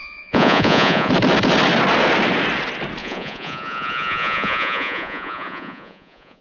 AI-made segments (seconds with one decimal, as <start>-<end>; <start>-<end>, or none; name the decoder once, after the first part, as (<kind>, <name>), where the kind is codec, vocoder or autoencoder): 0.0-1.1 (vocoder, Vocos); 3.0-6.4